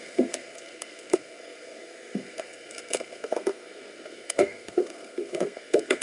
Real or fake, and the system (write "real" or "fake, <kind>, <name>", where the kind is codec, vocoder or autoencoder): fake, codec, SNAC